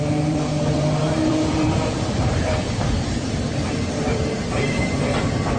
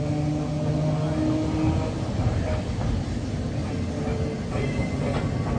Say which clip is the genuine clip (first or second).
second